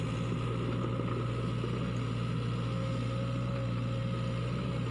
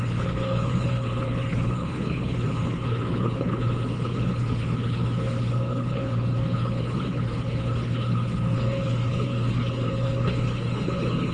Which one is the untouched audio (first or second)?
first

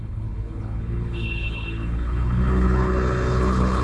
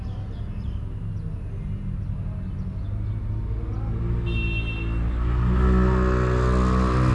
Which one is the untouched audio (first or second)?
second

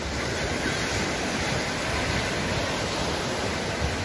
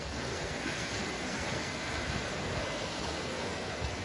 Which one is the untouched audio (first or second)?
first